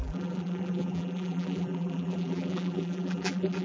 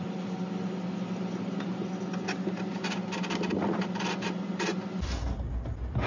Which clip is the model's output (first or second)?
first